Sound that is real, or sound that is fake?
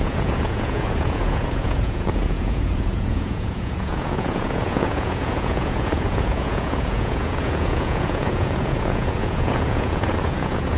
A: fake